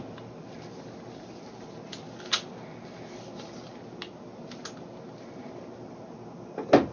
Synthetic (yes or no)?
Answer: no